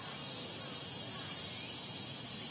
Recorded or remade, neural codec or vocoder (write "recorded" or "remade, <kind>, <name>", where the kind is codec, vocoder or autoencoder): recorded